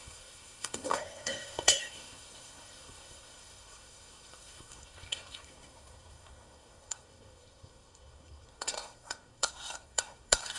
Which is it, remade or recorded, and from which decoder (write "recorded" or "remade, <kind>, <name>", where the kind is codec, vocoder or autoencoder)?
remade, codec, SNAC